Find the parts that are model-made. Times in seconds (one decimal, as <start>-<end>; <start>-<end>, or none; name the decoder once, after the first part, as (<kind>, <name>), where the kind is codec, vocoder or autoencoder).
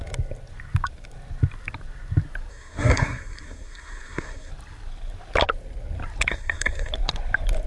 2.5-4.5 (codec, SNAC); 6.3-6.9